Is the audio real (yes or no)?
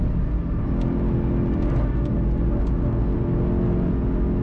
yes